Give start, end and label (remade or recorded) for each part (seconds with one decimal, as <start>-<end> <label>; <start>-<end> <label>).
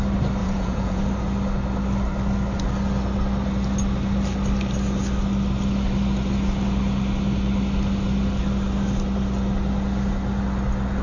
0.0-0.4 recorded; 0.4-1.0 remade; 1.0-11.0 recorded